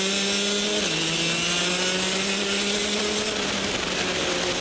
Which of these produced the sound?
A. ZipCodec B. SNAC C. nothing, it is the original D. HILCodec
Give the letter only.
C